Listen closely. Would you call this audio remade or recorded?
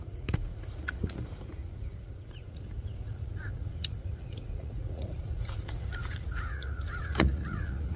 remade